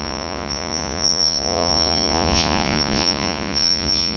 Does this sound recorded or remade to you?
remade